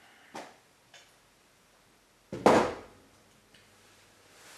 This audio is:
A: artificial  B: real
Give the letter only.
B